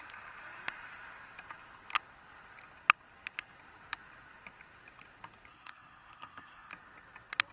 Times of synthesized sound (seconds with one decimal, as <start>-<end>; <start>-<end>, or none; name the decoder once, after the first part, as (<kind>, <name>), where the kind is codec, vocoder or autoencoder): 5.5-6.7 (codec, SNAC)